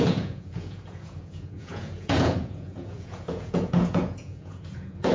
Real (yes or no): no